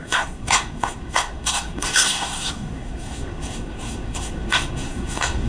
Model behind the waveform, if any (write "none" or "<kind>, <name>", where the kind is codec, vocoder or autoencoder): codec, SNAC